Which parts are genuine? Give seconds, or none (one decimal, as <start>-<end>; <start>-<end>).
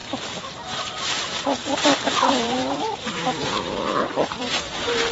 0.0-1.6; 4.5-5.1